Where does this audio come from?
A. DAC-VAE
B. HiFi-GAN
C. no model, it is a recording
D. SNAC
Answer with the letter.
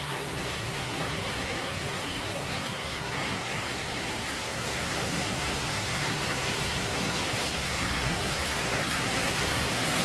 D